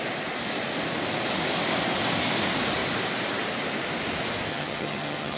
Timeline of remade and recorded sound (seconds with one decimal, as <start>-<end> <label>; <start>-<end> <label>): 0.0-4.5 recorded; 4.5-5.4 remade